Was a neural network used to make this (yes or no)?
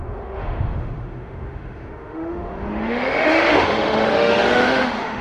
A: yes